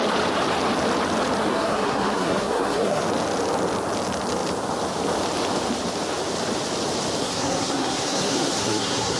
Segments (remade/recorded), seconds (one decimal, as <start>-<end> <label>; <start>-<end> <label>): 0.0-1.5 recorded; 1.5-3.0 remade; 3.0-7.2 recorded; 7.2-9.2 remade